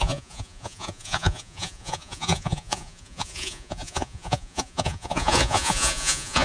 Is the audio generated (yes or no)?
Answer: yes